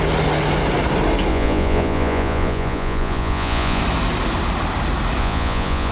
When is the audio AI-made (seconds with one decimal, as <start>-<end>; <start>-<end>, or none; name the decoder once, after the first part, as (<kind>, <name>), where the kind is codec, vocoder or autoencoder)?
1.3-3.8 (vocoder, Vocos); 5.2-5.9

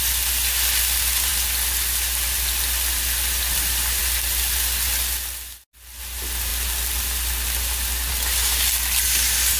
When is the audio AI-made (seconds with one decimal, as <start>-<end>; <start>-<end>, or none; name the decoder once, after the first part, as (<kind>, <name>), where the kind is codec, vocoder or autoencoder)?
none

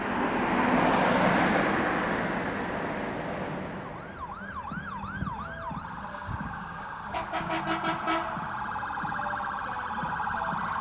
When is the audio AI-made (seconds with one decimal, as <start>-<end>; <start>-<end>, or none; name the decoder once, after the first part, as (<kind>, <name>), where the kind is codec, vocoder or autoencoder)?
6.1-7.6 (codec, DAC)

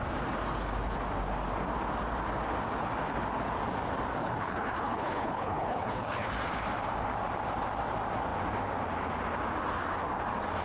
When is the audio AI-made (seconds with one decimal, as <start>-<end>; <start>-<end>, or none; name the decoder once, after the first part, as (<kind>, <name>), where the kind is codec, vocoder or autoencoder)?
4.2-6.3 (codec, HILCodec)

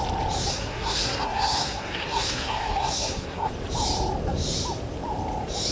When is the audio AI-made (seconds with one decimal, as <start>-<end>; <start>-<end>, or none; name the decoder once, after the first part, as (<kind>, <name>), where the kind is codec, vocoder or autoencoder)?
0.5-3.5 (codec, SNAC)

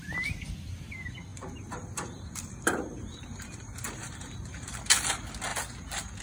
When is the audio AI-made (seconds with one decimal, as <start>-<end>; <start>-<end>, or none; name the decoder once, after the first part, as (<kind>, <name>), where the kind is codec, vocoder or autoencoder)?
1.3-4.8 (vocoder, BigVGAN v2)